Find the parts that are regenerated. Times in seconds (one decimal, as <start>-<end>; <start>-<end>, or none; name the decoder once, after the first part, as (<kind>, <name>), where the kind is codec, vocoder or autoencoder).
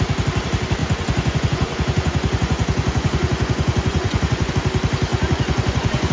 0.8-4.5 (vocoder, Vocos); 5.1-6.1